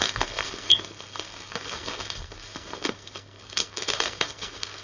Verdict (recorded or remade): remade